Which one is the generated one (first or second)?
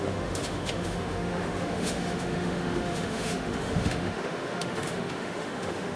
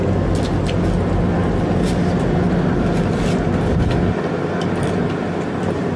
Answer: first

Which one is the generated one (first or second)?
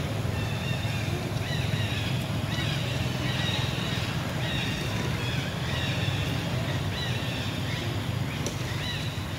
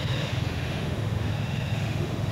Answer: second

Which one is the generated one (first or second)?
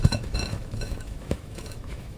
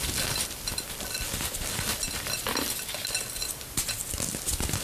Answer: first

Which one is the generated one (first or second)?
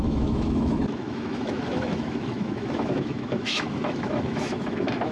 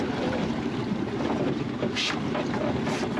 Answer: first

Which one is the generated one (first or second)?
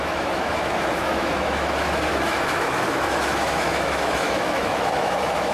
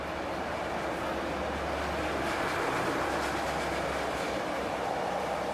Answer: first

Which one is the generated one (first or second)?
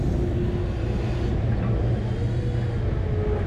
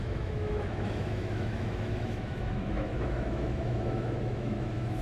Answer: second